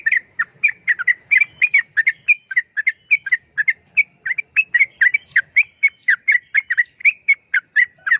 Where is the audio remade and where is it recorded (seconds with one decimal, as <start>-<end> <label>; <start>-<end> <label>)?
0.0-0.5 remade; 0.5-5.4 recorded; 5.4-7.0 remade; 7.0-8.2 recorded

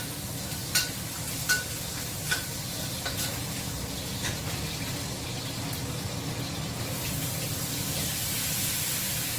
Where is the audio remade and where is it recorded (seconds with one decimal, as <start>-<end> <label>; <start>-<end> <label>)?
0.0-9.4 recorded

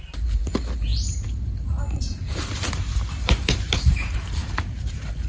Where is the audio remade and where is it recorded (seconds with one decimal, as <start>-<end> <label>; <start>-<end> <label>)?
0.0-5.3 remade

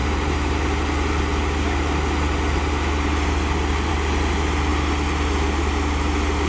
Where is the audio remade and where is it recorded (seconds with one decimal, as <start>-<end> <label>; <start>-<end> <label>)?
0.0-6.5 recorded

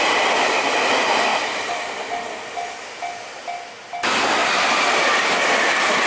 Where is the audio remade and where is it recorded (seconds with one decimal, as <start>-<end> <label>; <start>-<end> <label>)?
0.0-4.4 recorded; 4.4-6.1 remade